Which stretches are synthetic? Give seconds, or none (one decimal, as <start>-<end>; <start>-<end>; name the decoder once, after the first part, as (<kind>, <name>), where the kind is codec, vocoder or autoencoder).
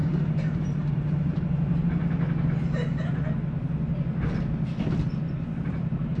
0.0-2.0 (vocoder, BigVGAN v2); 5.7-6.2